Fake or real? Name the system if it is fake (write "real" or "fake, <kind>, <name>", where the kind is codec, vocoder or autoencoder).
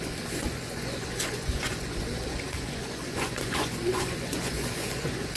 fake, vocoder, Vocos